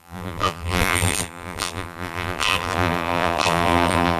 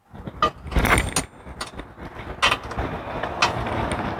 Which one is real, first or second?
second